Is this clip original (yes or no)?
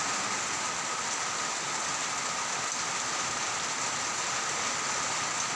yes